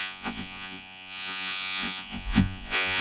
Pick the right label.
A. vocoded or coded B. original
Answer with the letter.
A